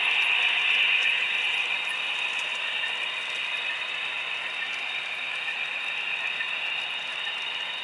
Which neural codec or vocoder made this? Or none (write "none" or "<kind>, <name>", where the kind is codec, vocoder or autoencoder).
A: none